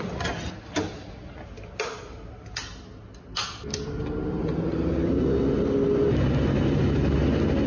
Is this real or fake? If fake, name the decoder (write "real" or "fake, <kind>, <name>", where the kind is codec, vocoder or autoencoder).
real